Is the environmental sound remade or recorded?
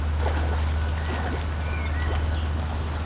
recorded